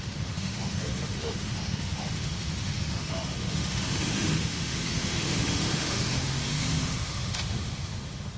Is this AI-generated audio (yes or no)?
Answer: yes